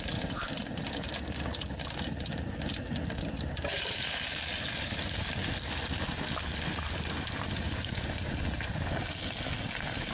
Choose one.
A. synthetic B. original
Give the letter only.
B